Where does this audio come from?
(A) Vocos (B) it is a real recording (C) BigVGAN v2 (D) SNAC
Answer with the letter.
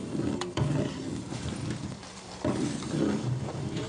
C